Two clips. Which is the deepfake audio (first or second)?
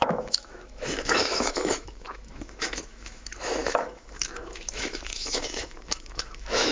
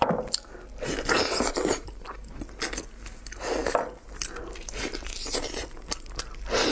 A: first